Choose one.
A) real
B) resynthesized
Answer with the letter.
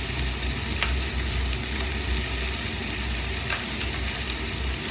A